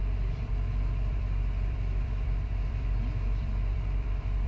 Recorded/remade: remade